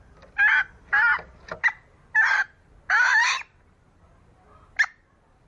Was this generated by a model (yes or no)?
no